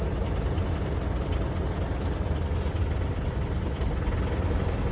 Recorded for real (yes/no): yes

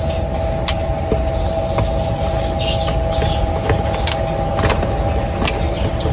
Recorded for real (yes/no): yes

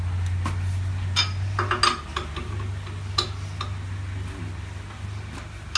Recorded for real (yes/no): yes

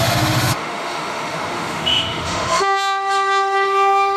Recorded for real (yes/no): no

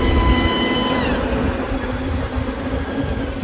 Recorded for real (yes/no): yes